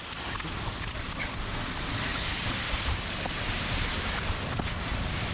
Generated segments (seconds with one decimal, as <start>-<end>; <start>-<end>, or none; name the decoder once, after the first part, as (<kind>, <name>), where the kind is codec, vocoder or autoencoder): none